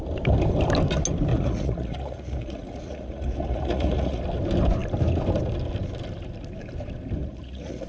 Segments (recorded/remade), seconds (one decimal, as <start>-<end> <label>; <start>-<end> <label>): 0.0-1.3 recorded; 1.3-4.2 remade; 4.2-7.2 recorded; 7.2-7.9 remade

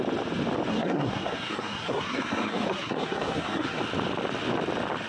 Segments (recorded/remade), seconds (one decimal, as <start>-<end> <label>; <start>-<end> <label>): 0.0-0.7 recorded; 0.7-3.8 remade; 3.8-5.1 recorded

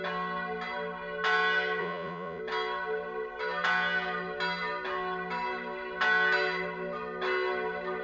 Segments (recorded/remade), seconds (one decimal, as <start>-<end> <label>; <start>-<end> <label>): 0.0-1.8 recorded; 1.8-2.4 remade; 2.4-8.0 recorded

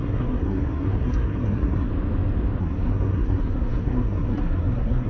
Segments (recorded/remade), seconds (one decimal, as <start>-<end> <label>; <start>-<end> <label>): 0.0-1.9 remade; 1.9-2.6 recorded; 2.6-5.1 remade

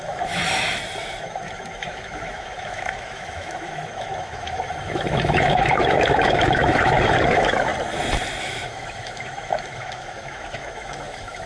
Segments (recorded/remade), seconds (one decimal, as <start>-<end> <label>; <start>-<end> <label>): 0.0-0.4 remade; 0.4-1.0 recorded; 1.0-7.7 remade; 7.7-8.4 recorded; 8.4-11.5 remade

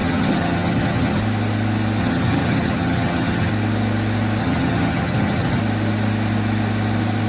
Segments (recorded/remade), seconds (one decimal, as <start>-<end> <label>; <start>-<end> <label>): 0.0-1.2 remade; 1.2-2.0 recorded; 2.0-3.5 remade; 3.5-4.4 recorded; 4.4-5.6 remade; 5.6-7.3 recorded

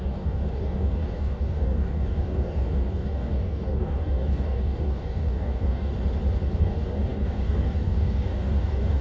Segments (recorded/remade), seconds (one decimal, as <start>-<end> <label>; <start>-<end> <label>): 0.0-5.9 remade; 5.9-6.6 recorded; 6.6-9.0 remade